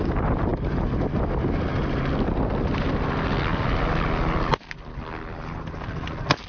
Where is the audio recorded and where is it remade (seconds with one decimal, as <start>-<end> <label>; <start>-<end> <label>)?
0.0-6.5 recorded